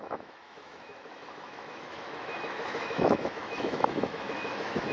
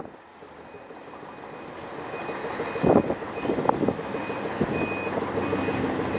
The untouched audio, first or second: second